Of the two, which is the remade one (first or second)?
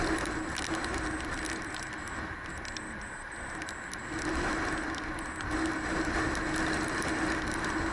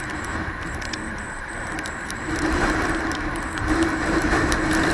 second